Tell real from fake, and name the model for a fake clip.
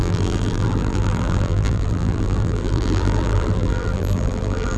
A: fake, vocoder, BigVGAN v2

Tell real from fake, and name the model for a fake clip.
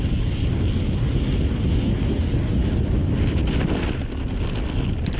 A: real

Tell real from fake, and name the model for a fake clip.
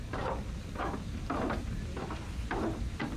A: real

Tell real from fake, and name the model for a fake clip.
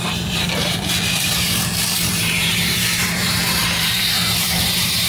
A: fake, vocoder, BigVGAN v2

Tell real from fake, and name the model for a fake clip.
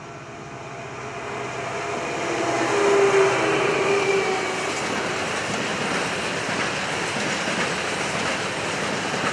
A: real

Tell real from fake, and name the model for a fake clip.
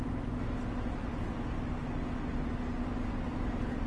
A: real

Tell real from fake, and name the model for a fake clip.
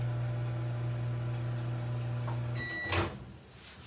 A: real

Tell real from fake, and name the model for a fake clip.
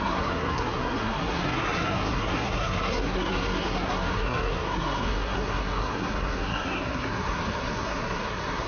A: fake, codec, SNAC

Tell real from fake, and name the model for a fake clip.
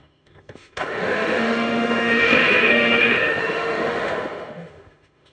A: fake, autoencoder, DAC-VAE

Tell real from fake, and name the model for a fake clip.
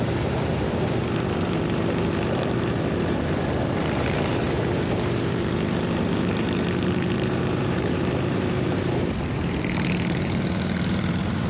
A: fake, vocoder, BigVGAN v2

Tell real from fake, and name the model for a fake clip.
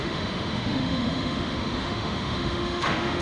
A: fake, autoencoder, DAC-VAE